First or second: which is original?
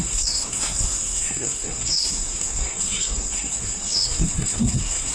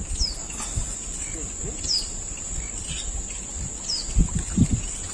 second